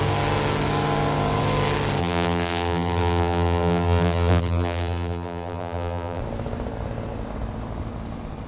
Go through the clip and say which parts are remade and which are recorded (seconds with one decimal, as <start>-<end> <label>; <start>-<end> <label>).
0.0-2.0 recorded; 2.0-6.2 remade; 6.2-8.5 recorded

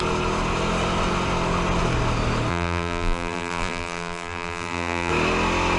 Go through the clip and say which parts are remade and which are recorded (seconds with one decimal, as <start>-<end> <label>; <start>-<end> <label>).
0.0-2.5 recorded; 2.5-5.1 remade; 5.1-5.8 recorded